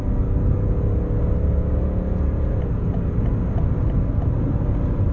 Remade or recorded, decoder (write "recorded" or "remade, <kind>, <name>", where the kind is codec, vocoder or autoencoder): recorded